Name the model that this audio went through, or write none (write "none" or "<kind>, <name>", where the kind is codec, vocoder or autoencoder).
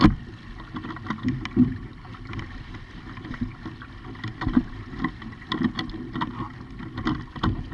none